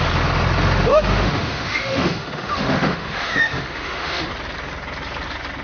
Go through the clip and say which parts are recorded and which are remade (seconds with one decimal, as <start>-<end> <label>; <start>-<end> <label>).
0.0-0.9 recorded; 0.9-4.3 remade; 4.3-5.6 recorded